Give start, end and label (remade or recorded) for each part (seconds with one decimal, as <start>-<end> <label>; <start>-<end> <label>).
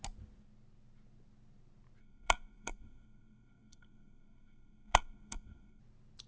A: 0.0-2.0 recorded; 2.0-5.8 remade; 5.8-6.3 recorded